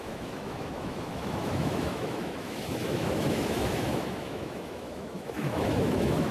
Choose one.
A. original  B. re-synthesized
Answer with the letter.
B